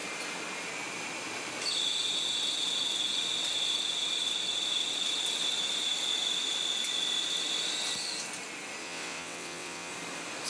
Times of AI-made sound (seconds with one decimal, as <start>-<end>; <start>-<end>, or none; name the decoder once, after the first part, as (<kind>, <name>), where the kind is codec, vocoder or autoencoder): 8.8-9.9 (vocoder, WaveNeXt)